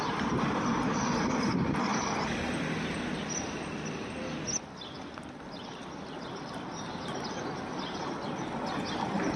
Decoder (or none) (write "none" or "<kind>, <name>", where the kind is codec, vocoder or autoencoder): none